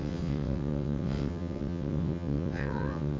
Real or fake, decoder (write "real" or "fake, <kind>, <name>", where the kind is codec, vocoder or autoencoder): fake, vocoder, WaveNeXt